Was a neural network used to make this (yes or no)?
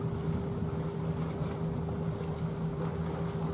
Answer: no